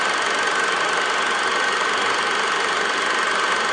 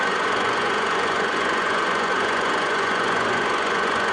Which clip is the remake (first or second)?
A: second